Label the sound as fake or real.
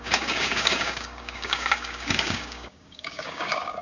fake